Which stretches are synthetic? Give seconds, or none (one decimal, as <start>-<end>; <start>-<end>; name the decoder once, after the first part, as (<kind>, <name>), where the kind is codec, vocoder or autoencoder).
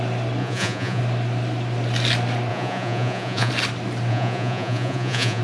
0.4-1.0 (vocoder, Vocos); 2.5-3.5; 4.1-5.4